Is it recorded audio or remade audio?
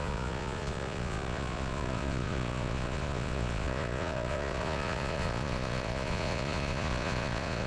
remade